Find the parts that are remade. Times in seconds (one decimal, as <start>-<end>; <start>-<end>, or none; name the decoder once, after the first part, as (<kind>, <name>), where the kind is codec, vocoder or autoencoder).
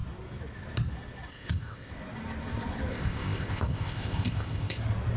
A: 1.3-1.9 (codec, ZipCodec); 2.9-4.8